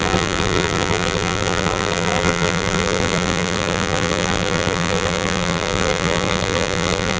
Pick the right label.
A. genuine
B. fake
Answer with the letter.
B